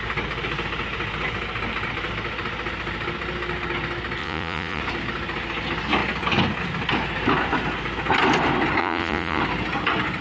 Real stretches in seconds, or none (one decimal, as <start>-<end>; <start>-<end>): 0.0-4.2; 4.8-8.8; 9.4-10.2